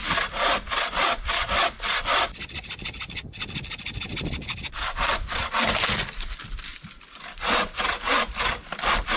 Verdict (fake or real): real